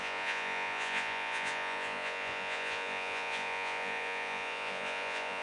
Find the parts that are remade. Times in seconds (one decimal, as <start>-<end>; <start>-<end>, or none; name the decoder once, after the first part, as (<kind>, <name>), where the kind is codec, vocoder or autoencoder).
0.0-5.4 (vocoder, Vocos)